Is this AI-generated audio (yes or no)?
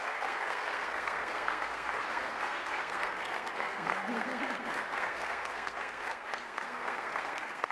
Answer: yes